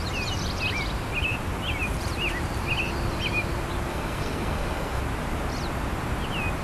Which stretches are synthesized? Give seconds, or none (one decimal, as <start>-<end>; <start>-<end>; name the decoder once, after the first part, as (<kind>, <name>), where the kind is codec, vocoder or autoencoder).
3.9-5.0 (codec, SNAC)